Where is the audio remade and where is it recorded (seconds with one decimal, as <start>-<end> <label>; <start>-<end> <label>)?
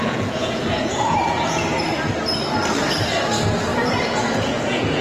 0.0-1.7 remade; 1.7-4.1 recorded; 4.1-5.0 remade